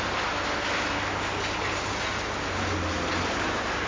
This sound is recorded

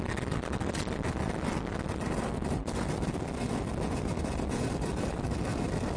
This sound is recorded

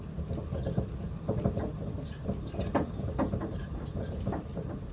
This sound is recorded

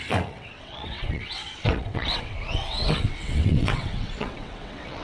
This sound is remade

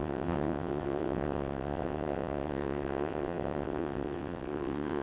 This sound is remade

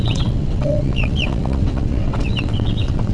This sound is remade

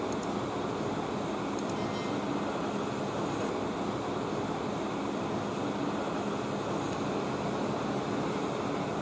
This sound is recorded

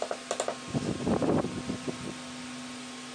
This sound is recorded